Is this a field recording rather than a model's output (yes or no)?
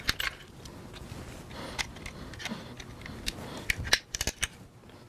yes